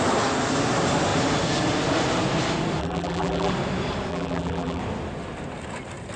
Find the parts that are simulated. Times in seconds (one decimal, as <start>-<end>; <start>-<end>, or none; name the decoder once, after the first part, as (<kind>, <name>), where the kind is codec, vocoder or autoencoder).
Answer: 2.8-3.5 (vocoder, BigVGAN v2); 4.1-4.8